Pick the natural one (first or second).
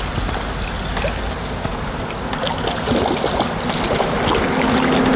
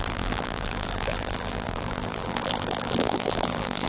first